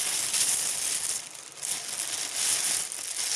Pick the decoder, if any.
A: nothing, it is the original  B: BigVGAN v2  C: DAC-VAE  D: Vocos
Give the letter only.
A